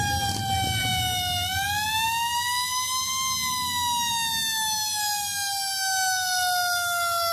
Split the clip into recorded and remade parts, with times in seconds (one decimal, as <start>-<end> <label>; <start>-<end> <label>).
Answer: 0.0-7.3 recorded